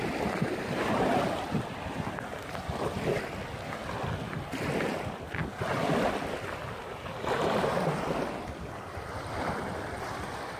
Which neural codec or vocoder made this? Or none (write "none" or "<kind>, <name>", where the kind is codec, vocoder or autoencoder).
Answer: none